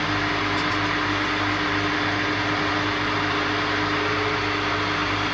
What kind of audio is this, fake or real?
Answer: real